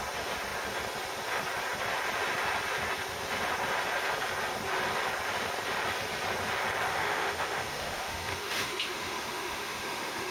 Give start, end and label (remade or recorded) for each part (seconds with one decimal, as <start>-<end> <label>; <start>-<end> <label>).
0.0-6.9 recorded; 6.9-10.3 remade